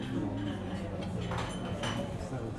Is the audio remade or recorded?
recorded